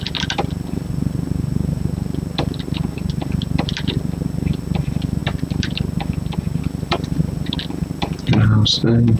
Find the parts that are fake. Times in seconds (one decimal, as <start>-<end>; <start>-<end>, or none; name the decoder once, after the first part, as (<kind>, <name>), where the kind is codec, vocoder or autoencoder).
none